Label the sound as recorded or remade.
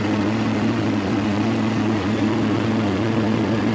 remade